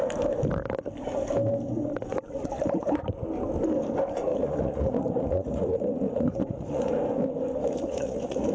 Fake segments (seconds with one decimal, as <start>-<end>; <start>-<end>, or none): 4.3-6.9; 7.6-8.5